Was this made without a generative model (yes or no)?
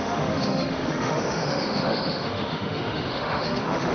no